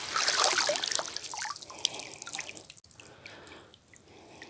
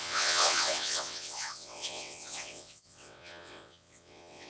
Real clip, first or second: first